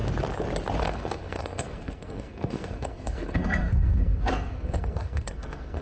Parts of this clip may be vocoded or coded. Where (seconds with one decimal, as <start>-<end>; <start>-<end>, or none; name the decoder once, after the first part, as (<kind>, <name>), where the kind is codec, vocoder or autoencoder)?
0.8-5.8 (codec, SNAC)